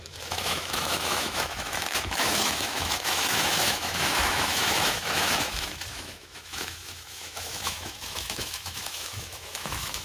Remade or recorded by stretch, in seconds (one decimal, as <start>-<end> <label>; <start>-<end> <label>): 0.0-10.0 remade